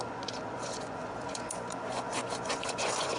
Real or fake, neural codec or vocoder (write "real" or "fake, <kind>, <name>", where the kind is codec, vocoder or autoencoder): fake, vocoder, Vocos